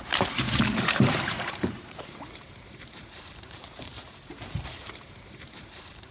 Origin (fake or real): fake